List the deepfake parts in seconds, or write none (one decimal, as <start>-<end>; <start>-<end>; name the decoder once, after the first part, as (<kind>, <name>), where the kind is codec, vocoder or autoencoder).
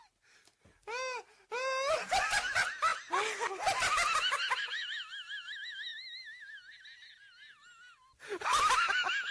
none